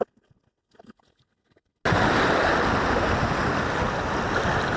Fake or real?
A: real